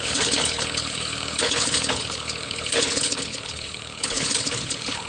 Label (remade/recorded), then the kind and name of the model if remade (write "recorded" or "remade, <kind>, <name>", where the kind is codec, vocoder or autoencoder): remade, codec, HILCodec